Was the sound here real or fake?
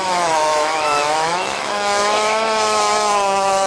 fake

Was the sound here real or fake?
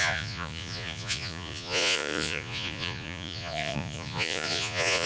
fake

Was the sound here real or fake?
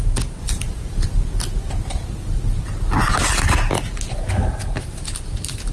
real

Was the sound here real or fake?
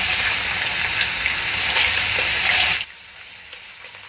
real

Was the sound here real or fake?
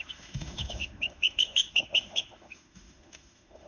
fake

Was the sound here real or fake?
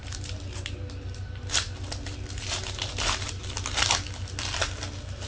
real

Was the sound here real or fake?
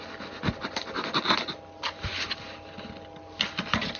real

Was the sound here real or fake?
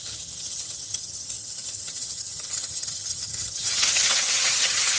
fake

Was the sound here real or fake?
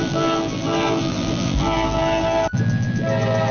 fake